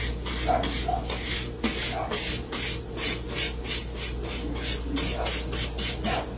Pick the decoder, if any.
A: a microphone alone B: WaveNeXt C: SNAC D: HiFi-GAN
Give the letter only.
A